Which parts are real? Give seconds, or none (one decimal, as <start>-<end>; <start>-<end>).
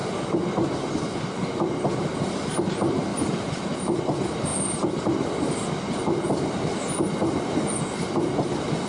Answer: 0.0-3.1; 4.0-8.9